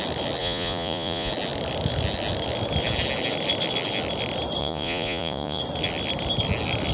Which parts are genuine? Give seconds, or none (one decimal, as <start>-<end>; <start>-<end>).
0.0-0.4; 1.3-4.6; 5.6-6.9

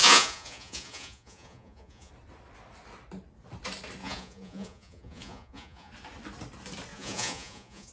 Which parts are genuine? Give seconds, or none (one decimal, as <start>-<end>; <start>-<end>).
2.1-4.0; 5.9-6.9

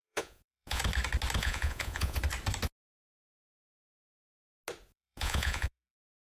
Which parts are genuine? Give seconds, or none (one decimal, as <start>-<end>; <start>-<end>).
0.8-1.4; 2.2-4.9

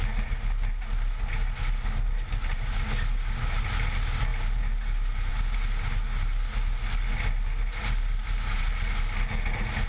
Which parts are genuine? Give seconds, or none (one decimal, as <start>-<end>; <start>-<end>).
0.0-9.9

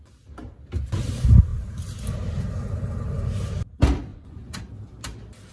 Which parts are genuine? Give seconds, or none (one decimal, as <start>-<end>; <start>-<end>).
0.0-4.1; 4.6-5.5